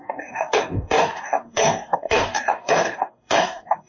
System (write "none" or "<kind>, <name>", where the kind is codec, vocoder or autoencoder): codec, DAC